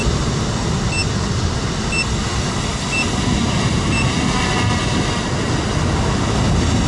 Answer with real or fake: real